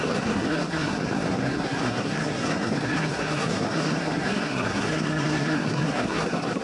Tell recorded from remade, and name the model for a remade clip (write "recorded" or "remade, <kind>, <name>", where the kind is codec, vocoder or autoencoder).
remade, codec, SNAC